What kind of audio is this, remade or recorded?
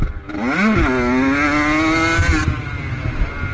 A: recorded